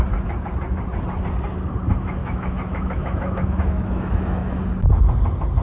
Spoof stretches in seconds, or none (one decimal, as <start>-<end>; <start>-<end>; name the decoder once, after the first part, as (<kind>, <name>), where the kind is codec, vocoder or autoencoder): 2.2-4.7 (autoencoder, DAC-VAE)